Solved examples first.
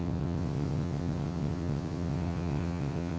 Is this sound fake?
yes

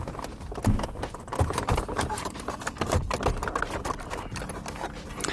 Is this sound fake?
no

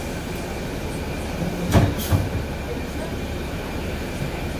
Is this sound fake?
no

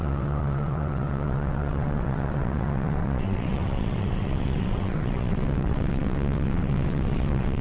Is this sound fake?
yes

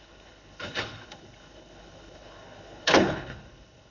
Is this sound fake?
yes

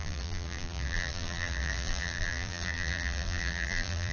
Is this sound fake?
yes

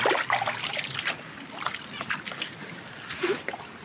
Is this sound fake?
no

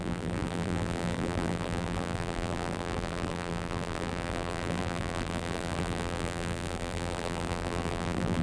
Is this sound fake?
yes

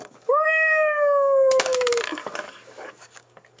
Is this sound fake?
yes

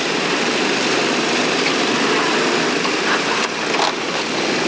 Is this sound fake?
no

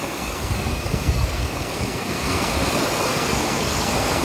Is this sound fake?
yes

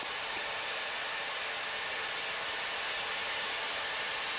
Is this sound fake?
no